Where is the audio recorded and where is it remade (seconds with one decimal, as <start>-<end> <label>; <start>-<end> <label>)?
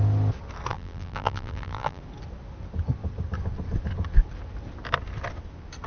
0.0-0.7 recorded; 0.7-2.0 remade; 2.0-5.9 recorded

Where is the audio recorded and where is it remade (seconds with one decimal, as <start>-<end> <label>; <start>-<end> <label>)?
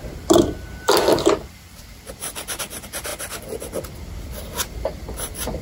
0.0-3.1 remade; 3.1-4.0 recorded; 4.0-5.6 remade